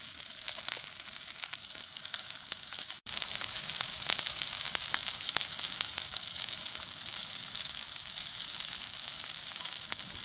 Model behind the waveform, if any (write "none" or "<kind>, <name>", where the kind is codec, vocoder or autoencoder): codec, DAC